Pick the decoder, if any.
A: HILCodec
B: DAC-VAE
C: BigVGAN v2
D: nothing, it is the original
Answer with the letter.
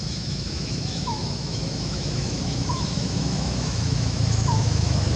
B